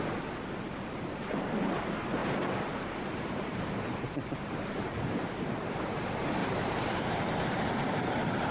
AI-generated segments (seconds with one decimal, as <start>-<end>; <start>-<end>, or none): 2.2-6.0; 6.4-8.5